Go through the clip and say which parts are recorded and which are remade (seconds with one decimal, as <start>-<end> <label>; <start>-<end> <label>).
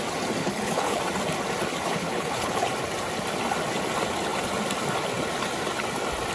0.0-0.4 recorded; 0.4-1.0 remade; 1.0-1.9 recorded; 1.9-2.7 remade; 2.7-6.3 recorded